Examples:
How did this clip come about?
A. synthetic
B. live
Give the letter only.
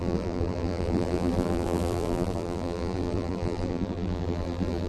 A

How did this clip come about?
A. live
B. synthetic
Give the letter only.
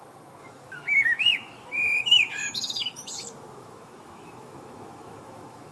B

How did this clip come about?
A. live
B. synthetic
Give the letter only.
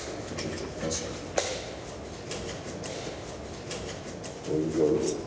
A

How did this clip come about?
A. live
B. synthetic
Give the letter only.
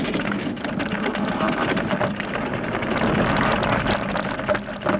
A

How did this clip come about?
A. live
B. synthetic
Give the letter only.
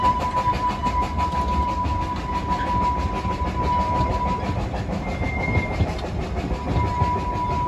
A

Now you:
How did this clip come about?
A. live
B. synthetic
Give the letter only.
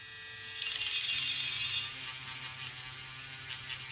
A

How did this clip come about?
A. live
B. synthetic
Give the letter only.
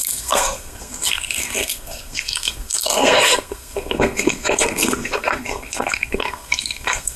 B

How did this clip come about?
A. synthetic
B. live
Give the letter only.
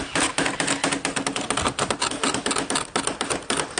B